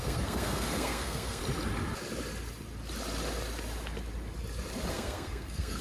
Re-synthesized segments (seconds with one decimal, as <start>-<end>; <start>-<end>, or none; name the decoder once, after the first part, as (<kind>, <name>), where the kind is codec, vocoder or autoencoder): 0.0-1.4 (codec, SNAC); 4.9-5.8